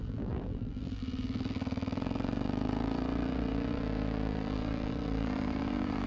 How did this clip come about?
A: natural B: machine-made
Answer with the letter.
B